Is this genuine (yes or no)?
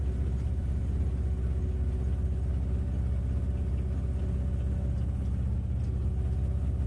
yes